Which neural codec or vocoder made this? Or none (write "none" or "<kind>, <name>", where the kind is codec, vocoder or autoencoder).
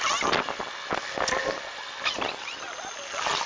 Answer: none